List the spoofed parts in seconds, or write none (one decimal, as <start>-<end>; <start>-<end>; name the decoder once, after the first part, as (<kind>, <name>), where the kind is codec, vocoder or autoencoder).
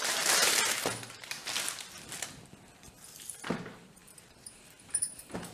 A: 0.0-1.4 (vocoder, BigVGAN v2); 3.2-5.5